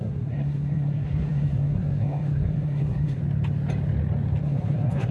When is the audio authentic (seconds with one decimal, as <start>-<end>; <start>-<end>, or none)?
3.2-4.4